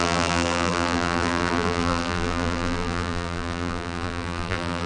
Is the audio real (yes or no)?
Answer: no